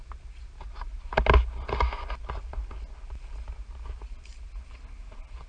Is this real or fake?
real